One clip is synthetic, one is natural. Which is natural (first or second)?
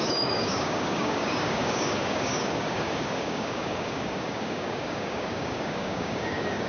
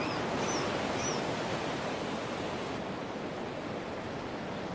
second